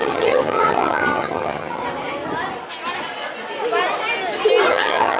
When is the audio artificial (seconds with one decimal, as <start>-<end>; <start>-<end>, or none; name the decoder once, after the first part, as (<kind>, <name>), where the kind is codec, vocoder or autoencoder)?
0.0-1.8 (vocoder, HiFi-GAN); 4.7-5.2